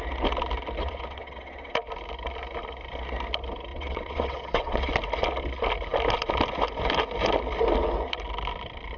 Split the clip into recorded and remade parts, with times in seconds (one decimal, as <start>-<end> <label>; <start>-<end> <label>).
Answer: 0.0-0.8 recorded; 0.8-1.7 remade; 1.7-3.7 recorded; 3.7-4.9 remade; 4.9-9.0 recorded